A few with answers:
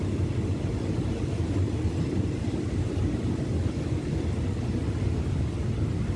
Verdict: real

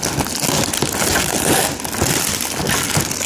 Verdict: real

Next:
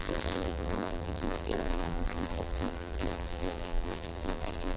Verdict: fake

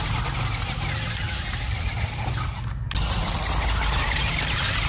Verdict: real